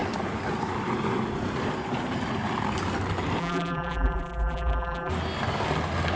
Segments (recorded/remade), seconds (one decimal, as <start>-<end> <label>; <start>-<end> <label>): 0.0-3.4 recorded; 3.4-5.1 remade; 5.1-6.2 recorded